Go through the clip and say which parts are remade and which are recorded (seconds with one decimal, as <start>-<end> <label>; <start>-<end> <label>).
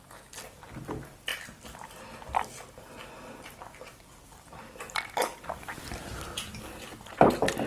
0.0-7.7 recorded